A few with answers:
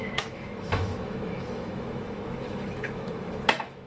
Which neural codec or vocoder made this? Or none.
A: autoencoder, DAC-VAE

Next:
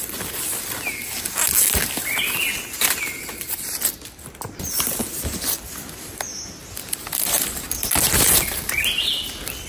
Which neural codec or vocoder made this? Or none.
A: none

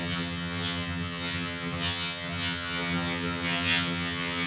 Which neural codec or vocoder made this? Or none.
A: vocoder, HiFi-GAN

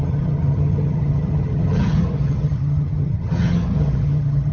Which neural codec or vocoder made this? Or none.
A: vocoder, HiFi-GAN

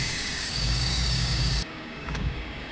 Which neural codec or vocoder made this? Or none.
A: codec, DAC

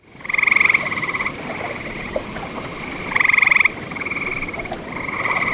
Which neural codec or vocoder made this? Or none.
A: vocoder, BigVGAN v2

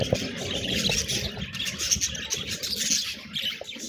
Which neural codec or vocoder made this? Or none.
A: none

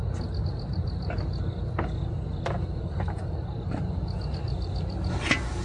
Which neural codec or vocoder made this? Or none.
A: none